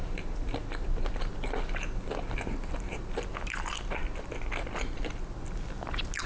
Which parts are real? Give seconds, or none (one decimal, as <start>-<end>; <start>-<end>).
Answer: 0.0-6.3